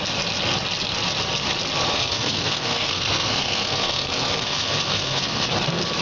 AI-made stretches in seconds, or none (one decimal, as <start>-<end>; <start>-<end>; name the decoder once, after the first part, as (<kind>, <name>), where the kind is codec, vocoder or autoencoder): 1.9-5.5 (codec, SNAC)